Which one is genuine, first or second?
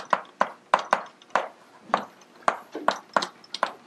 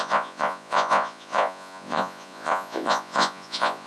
first